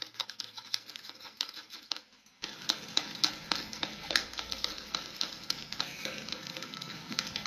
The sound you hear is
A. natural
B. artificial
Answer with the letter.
B